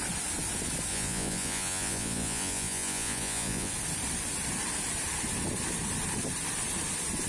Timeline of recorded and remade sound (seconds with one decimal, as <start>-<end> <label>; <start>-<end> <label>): 0.0-0.9 recorded; 0.9-3.7 remade; 3.7-7.3 recorded

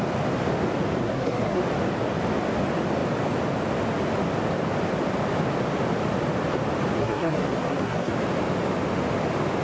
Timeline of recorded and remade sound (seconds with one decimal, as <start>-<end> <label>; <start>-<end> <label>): 0.0-1.0 recorded; 1.0-1.6 remade; 1.6-7.0 recorded; 7.0-8.1 remade; 8.1-9.6 recorded

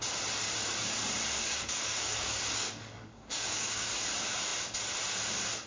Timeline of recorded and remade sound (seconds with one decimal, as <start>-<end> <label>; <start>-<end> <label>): 0.0-1.4 recorded; 1.4-3.9 remade; 3.9-5.7 recorded

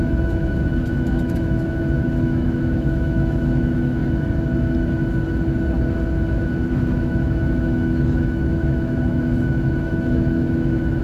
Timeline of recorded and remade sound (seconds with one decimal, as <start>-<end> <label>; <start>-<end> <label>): 0.0-4.0 remade; 4.0-6.7 recorded; 6.7-11.0 remade

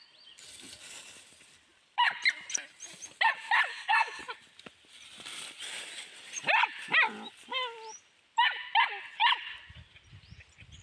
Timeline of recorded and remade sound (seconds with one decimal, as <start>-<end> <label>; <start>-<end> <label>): 0.0-3.7 recorded; 3.7-4.2 remade; 4.2-10.8 recorded

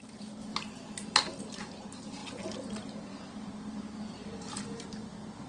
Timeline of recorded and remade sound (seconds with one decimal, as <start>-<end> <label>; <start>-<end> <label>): 0.0-5.5 recorded